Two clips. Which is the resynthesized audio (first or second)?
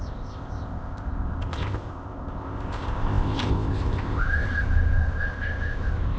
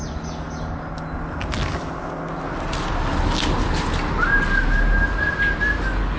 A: first